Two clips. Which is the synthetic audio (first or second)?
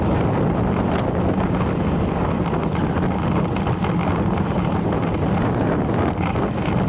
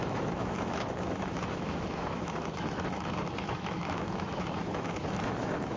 second